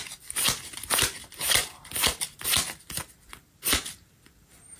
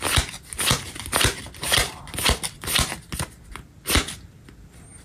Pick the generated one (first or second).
first